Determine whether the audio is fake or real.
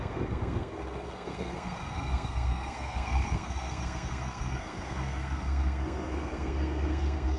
fake